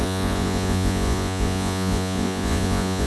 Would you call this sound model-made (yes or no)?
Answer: yes